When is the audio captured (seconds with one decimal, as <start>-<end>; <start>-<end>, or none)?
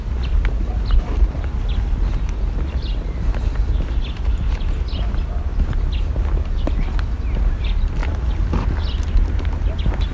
0.0-10.1